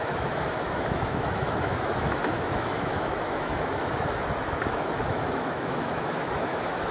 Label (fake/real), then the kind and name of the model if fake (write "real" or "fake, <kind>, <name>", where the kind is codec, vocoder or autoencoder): fake, autoencoder, DAC-VAE